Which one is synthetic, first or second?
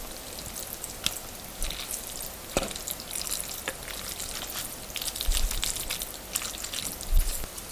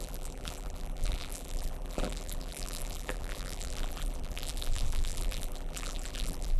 second